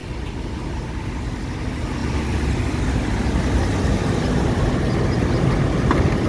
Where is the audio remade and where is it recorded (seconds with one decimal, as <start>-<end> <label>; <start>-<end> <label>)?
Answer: 0.0-6.3 recorded